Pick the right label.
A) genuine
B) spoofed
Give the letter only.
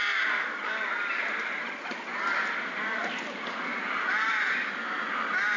A